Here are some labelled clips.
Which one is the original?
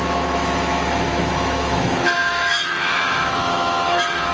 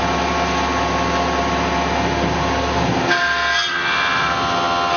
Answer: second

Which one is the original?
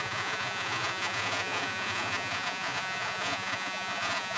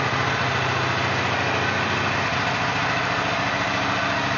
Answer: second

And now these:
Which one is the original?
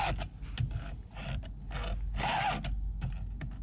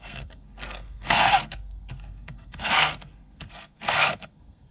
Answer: first